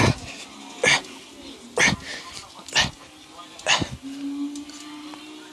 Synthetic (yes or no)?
no